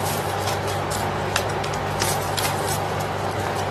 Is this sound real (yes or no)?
yes